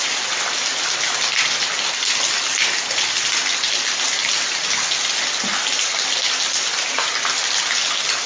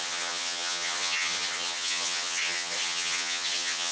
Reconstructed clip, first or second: second